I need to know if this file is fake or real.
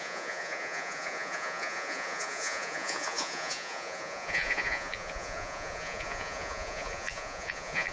fake